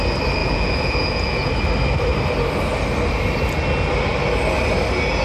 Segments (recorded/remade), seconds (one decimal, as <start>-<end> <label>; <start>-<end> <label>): 0.0-0.4 recorded; 0.4-1.5 remade; 1.5-5.2 recorded